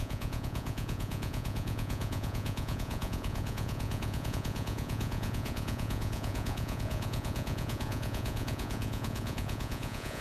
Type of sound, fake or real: fake